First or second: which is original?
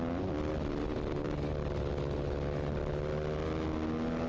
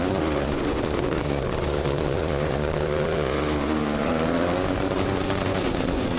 first